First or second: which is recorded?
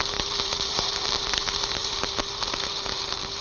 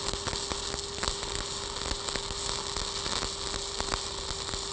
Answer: second